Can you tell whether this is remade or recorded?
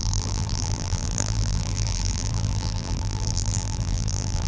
remade